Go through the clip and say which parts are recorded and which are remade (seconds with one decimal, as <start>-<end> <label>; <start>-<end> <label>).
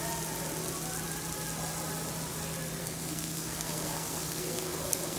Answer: 0.0-2.8 recorded; 2.8-5.2 remade